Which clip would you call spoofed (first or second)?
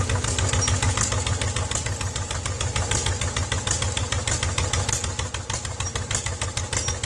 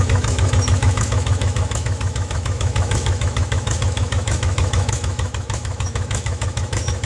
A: second